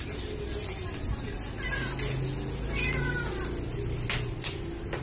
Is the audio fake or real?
real